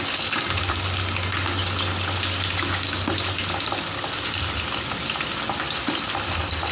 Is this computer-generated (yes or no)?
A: no